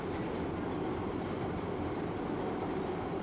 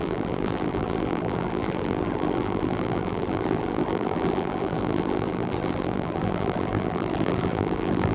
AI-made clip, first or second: second